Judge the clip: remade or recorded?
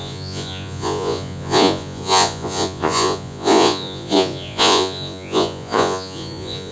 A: remade